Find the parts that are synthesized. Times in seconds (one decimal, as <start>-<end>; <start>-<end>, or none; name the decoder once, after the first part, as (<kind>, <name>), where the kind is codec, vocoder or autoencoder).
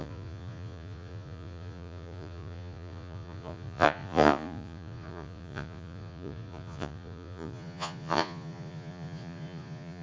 0.0-10.0 (vocoder, Vocos)